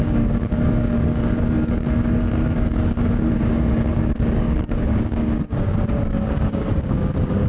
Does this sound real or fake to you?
fake